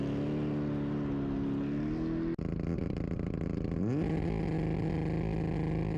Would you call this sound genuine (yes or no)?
yes